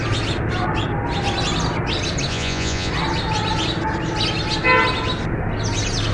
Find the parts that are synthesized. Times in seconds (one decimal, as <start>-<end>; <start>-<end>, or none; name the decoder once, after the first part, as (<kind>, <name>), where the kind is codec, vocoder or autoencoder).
2.3-2.9 (vocoder, Vocos)